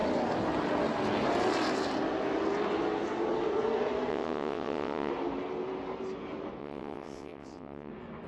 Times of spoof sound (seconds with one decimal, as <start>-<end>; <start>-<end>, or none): 4.1-5.1; 6.6-7.9